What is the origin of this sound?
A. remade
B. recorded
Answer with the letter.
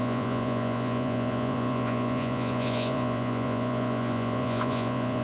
A